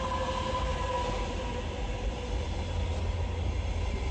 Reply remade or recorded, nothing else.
recorded